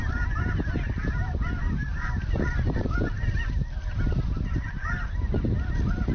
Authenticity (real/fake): real